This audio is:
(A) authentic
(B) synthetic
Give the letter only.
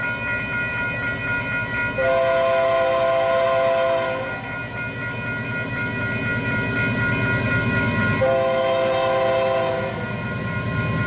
A